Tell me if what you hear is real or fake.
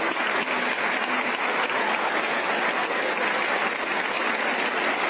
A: real